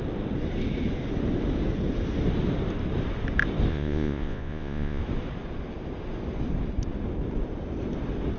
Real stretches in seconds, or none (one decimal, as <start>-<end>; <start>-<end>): 0.0-3.7; 5.0-8.4